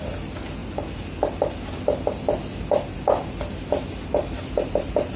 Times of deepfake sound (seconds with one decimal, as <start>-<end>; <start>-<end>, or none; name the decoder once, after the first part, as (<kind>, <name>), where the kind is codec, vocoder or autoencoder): none